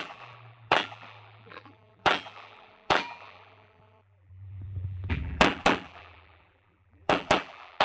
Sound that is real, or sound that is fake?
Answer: fake